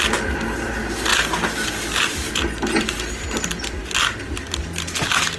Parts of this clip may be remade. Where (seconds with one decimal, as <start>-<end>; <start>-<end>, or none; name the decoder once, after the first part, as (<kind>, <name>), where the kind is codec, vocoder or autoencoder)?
none